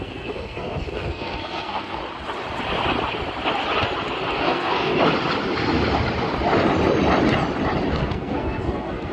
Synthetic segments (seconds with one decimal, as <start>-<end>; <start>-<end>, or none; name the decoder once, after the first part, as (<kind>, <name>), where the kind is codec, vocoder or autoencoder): 0.0-2.0 (codec, SNAC); 4.3-4.9; 7.9-9.1